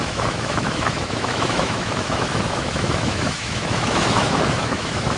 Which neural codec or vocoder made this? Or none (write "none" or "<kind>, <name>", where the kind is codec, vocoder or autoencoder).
autoencoder, DAC-VAE